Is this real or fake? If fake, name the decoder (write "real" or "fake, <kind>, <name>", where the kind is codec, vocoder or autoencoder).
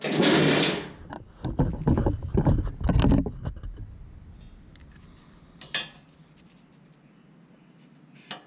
real